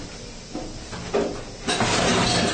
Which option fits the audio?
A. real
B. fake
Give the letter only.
A